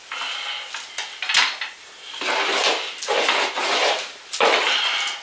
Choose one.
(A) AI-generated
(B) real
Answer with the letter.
B